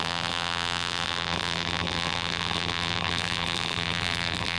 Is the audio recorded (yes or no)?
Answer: no